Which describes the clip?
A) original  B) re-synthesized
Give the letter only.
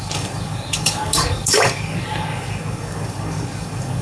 B